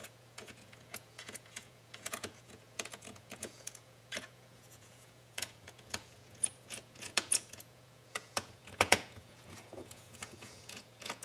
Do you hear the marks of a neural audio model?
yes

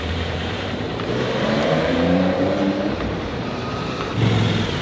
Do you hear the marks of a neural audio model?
yes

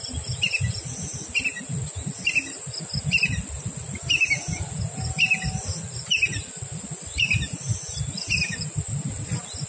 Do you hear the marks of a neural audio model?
no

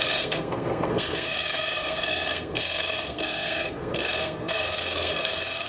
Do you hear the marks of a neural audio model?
yes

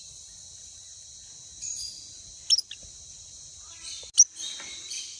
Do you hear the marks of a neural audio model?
no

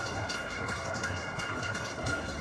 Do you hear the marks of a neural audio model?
yes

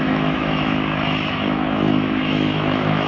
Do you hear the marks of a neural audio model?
yes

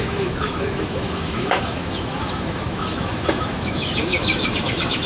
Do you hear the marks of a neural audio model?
yes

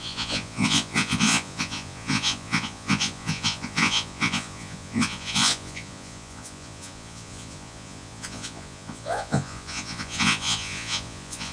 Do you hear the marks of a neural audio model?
yes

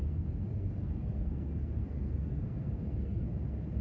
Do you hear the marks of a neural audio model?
yes